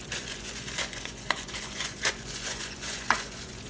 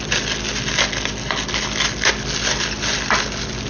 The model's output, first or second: first